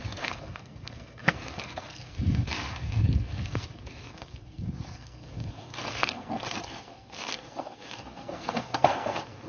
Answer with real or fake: fake